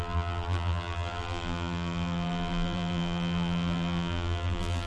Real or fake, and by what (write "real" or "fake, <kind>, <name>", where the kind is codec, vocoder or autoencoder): fake, vocoder, BigVGAN v2